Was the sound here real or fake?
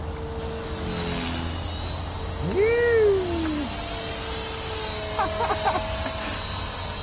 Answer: real